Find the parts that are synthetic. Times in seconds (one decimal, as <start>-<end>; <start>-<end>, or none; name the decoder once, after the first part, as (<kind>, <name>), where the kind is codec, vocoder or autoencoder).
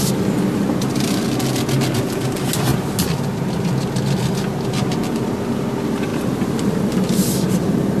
6.1-7.6 (vocoder, BigVGAN v2)